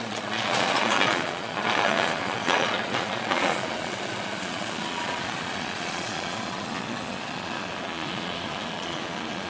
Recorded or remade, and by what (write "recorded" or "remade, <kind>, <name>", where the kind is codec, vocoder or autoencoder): remade, vocoder, Vocos